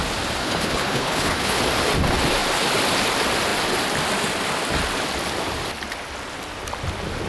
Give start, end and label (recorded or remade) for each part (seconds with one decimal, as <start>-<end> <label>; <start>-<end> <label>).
0.0-0.4 recorded; 0.4-1.6 remade; 1.6-7.3 recorded